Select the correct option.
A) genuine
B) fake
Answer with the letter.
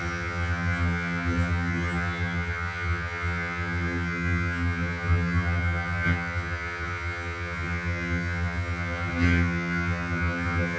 B